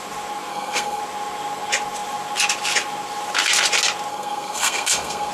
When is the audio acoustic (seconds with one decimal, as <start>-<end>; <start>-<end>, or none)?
0.0-0.5; 1.0-4.1